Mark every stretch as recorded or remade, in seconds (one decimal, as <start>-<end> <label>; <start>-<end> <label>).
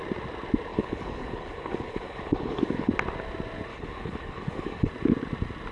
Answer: 0.0-0.7 recorded; 0.7-2.9 remade; 2.9-3.7 recorded; 3.7-4.9 remade; 4.9-5.7 recorded